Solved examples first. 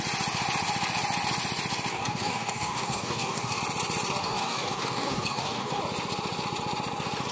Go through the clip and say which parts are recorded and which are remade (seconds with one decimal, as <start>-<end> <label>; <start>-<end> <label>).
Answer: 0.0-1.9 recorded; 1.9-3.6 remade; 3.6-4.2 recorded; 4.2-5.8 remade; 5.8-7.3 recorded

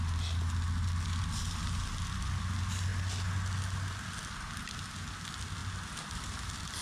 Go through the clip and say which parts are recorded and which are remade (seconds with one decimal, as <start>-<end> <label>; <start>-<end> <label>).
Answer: 0.0-6.8 recorded

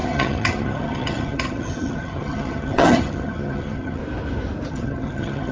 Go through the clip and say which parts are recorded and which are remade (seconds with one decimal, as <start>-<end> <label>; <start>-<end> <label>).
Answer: 0.0-4.0 remade; 4.0-4.7 recorded; 4.7-5.5 remade